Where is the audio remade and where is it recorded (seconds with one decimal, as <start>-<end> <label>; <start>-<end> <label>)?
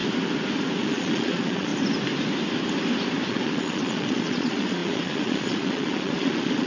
0.0-0.8 recorded; 0.8-1.7 remade; 1.7-3.3 recorded; 3.3-6.7 remade